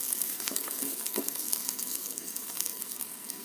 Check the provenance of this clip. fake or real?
fake